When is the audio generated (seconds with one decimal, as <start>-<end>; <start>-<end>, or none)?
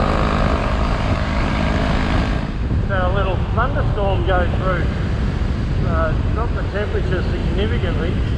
0.6-1.5